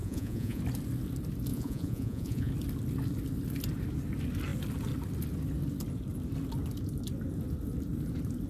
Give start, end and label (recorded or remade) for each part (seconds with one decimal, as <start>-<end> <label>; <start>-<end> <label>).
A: 0.0-0.6 remade; 0.6-1.5 recorded; 1.5-2.5 remade; 2.5-8.5 recorded